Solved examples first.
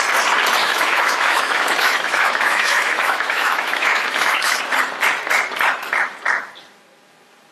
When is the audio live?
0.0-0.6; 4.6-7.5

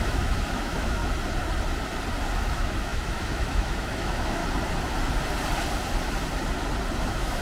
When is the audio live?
1.0-2.3; 4.4-7.0

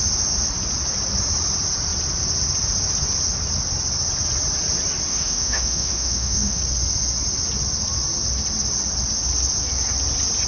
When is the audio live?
0.0-5.1; 6.6-10.5